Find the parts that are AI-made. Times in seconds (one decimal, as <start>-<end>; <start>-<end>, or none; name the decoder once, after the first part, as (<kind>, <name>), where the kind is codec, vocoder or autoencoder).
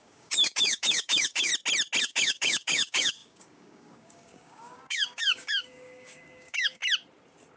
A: 0.0-1.5 (codec, DAC); 2.0-6.8